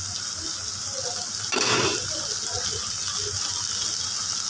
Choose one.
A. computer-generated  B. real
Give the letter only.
B